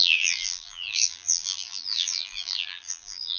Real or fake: fake